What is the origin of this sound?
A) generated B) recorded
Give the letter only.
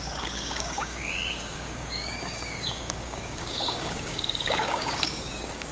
A